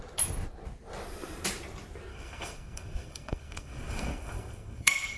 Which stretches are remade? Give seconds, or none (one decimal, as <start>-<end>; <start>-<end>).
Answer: 2.1-5.2